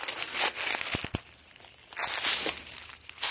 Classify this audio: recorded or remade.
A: recorded